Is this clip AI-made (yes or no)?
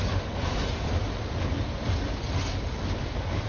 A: no